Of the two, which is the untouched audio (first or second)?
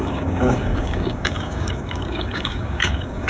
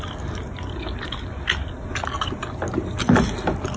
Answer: second